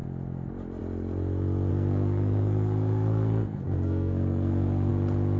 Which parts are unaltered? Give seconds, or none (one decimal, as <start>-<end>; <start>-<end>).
0.0-1.7; 4.9-5.4